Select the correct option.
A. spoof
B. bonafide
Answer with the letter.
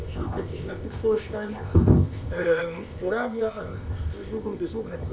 A